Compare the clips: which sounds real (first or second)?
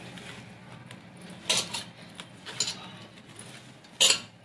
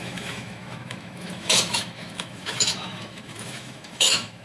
first